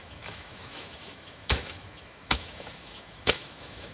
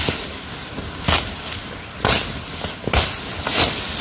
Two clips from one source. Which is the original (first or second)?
second